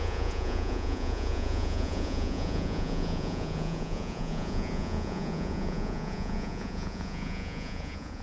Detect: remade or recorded remade